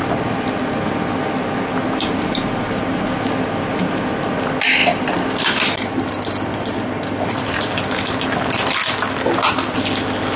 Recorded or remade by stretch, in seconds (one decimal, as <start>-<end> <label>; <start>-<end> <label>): 0.0-4.8 recorded; 4.8-7.7 remade; 7.7-10.4 recorded